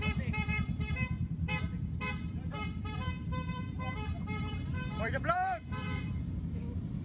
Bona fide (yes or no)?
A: no